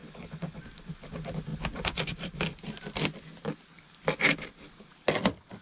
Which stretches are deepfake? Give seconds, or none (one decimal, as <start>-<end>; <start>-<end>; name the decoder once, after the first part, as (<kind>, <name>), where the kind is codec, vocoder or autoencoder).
0.0-0.6 (codec, HILCodec)